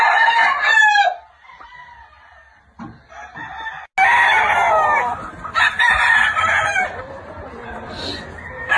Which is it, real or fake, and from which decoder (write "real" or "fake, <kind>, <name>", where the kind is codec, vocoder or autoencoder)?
real